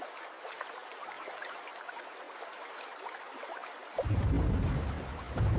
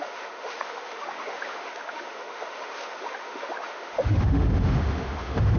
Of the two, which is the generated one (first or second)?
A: second